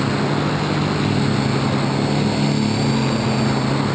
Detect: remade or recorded recorded